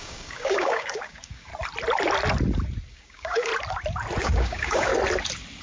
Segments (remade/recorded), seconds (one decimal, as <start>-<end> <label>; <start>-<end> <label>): 0.0-1.5 remade; 1.5-2.9 recorded; 2.9-3.5 remade; 3.5-4.2 recorded; 4.2-4.9 remade; 4.9-5.6 recorded